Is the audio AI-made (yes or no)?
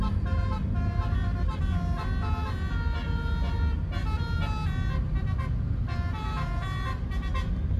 no